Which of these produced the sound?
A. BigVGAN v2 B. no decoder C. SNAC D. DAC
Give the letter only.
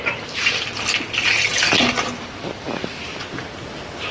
B